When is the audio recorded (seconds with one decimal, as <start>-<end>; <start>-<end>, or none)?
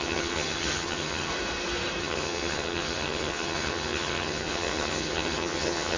1.3-2.0